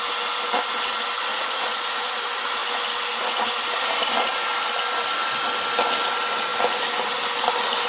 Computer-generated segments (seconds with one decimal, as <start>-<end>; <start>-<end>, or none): 1.3-2.1